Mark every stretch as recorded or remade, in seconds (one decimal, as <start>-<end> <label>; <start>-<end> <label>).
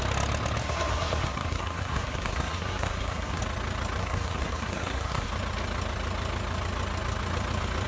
0.0-0.6 recorded; 0.6-3.4 remade; 3.4-4.0 recorded; 4.0-5.3 remade; 5.3-7.9 recorded